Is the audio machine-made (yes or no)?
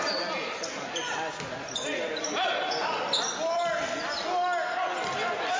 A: no